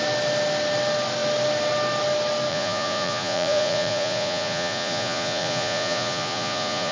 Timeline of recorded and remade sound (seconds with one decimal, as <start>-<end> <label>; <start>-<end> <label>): 0.0-2.5 recorded; 2.5-6.9 remade